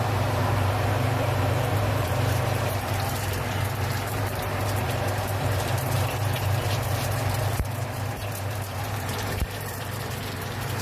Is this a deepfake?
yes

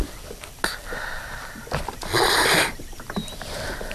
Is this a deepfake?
no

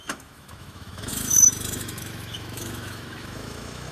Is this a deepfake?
yes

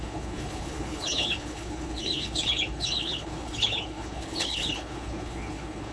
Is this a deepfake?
yes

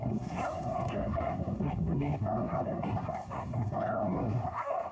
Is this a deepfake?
yes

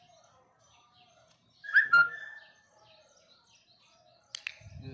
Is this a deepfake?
no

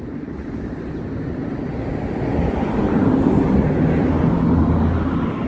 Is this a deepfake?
no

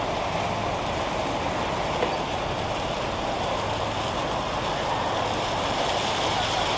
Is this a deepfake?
no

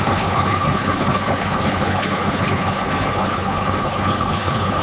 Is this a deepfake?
yes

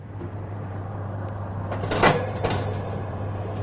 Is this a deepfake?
yes